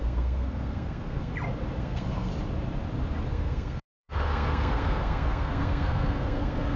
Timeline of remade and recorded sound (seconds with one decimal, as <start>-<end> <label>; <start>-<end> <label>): 0.0-1.3 remade; 1.3-1.8 recorded; 1.8-2.3 remade; 2.3-3.3 recorded; 3.3-6.8 remade